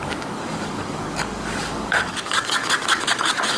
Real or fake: fake